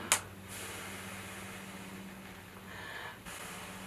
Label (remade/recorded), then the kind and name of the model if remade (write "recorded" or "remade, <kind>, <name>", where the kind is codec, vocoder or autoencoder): recorded